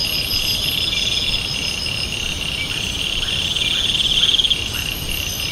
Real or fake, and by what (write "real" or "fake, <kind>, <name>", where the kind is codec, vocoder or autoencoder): real